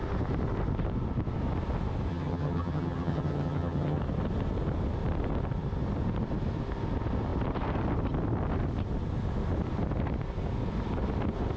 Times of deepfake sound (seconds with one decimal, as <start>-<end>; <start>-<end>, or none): 2.1-4.0